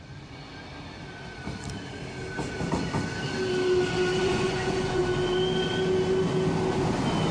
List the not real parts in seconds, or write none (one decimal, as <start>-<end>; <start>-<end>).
0.0-0.5; 4.2-5.0